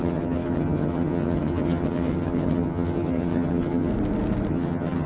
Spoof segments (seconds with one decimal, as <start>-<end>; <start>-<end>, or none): 0.0-3.9; 4.5-5.1